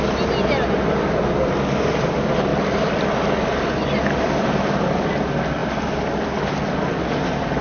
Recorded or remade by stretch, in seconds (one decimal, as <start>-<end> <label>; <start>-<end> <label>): 0.0-7.6 recorded